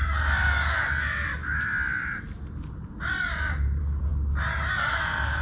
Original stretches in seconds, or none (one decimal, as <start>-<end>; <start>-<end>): 1.4-3.3; 4.1-5.0